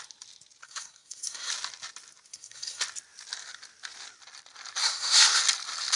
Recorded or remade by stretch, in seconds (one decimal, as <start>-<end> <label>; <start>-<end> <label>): 0.0-0.6 recorded; 0.6-1.5 remade; 1.5-2.3 recorded; 2.3-2.8 remade; 2.8-4.8 recorded; 4.8-5.4 remade; 5.4-6.0 recorded